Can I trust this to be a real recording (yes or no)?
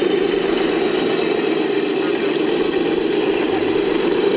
yes